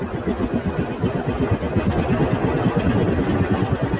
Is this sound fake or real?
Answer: real